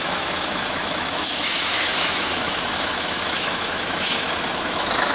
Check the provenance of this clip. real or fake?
fake